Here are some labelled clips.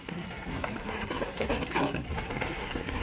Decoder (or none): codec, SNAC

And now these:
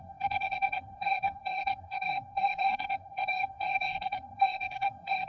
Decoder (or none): codec, SNAC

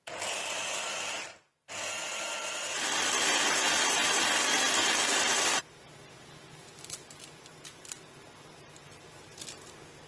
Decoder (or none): none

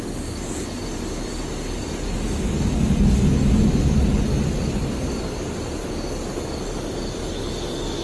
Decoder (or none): none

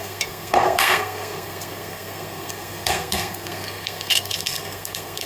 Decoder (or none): codec, SNAC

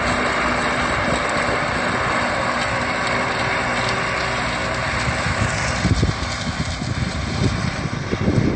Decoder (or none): none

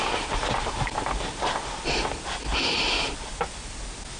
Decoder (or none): none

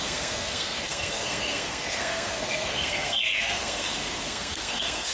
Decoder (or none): codec, SNAC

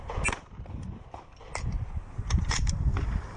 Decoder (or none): none